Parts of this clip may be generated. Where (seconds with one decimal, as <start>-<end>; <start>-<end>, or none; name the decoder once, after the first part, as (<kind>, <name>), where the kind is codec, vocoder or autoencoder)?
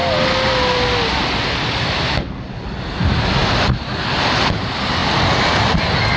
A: none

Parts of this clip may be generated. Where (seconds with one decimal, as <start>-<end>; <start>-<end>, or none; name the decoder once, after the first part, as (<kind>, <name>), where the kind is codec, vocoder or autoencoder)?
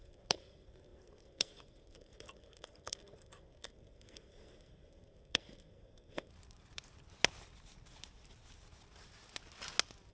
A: 0.0-6.3 (codec, SNAC)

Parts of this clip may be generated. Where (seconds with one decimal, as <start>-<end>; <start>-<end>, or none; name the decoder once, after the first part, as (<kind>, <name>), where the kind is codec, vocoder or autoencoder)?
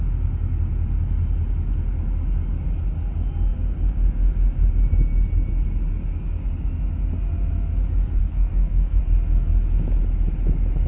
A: 8.2-9.0 (codec, SNAC)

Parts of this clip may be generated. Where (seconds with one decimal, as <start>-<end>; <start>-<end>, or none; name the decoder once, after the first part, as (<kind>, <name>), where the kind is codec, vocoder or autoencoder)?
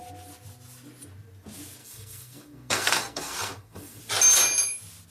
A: 1.8-4.0 (codec, SNAC)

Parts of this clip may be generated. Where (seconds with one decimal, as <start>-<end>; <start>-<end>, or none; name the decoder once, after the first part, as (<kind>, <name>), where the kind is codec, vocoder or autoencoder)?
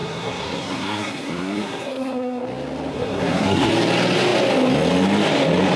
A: 0.0-2.4 (codec, SNAC); 2.9-3.7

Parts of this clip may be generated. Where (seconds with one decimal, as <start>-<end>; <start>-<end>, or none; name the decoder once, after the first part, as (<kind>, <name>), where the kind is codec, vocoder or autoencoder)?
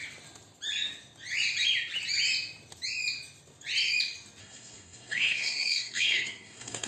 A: 4.4-6.9 (codec, SNAC)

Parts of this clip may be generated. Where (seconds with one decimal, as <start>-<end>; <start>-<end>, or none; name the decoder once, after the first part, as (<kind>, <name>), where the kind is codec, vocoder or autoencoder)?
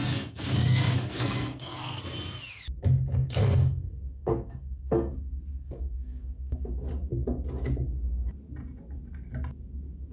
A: 0.0-2.0 (codec, SNAC); 3.2-5.1; 5.5-6.7